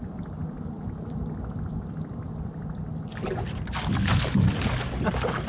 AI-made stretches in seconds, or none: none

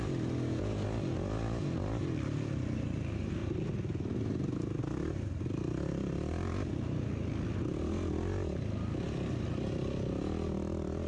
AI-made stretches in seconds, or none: none

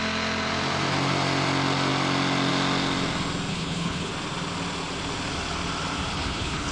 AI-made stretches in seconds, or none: 3.5-4.1 (codec, HILCodec); 6.1-6.7

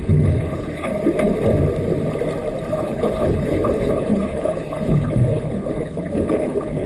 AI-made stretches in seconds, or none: 0.0-0.9 (codec, HILCodec); 2.7-6.9

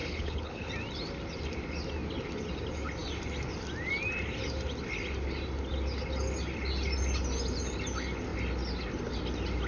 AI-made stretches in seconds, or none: 0.0-0.7 (codec, HILCodec)

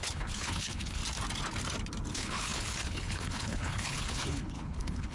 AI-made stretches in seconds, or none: 0.0-1.0 (codec, HILCodec); 2.1-5.1